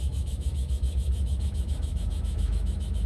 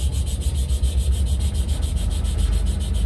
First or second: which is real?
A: second